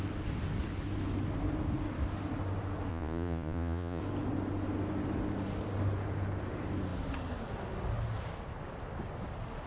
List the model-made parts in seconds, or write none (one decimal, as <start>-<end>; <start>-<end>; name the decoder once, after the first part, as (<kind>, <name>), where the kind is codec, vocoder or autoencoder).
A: 2.9-4.0 (vocoder, Vocos)